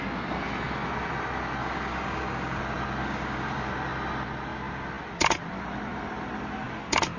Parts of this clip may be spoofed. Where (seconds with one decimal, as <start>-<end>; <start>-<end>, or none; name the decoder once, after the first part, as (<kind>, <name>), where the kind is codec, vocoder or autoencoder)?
1.6-2.6 (codec, DAC); 3.0-3.7